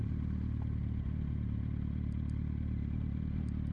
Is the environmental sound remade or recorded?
recorded